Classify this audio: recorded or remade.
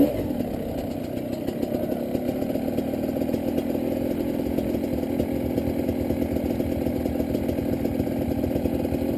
recorded